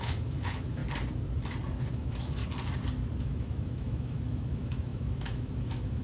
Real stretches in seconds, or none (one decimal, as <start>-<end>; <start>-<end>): 0.8-1.9; 2.4-3.2

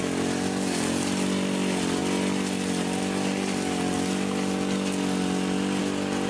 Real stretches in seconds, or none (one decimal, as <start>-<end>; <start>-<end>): 0.0-6.3

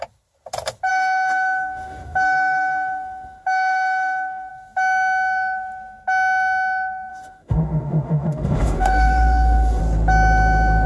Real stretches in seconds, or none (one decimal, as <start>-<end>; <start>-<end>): 0.0-0.9; 4.5-7.1; 9.8-10.9